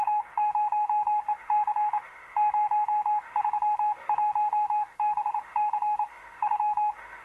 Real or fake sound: fake